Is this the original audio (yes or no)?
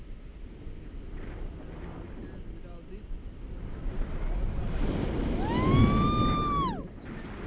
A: yes